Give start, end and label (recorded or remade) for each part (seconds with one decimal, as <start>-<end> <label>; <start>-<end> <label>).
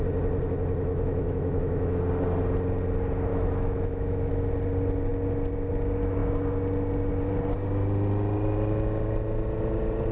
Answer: 0.0-0.9 recorded; 0.9-2.0 remade; 2.0-3.3 recorded; 3.3-4.3 remade; 4.3-10.1 recorded